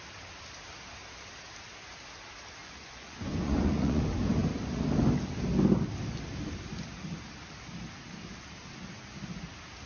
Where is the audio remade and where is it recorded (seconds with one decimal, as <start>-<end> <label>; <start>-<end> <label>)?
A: 0.0-2.6 recorded; 2.6-4.0 remade; 4.0-9.9 recorded